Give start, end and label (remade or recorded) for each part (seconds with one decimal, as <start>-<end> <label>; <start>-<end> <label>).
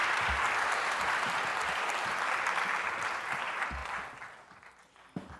0.0-1.5 recorded; 1.5-3.2 remade; 3.2-3.8 recorded; 3.8-4.9 remade; 4.9-5.4 recorded